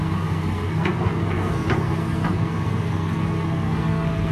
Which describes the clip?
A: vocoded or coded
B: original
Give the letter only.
A